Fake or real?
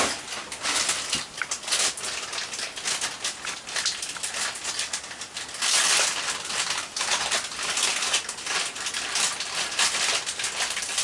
real